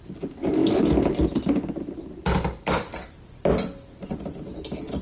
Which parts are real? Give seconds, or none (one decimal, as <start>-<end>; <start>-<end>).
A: 0.0-5.0